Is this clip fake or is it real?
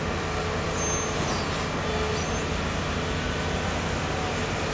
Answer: real